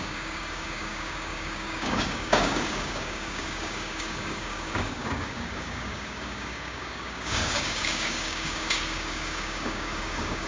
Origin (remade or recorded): remade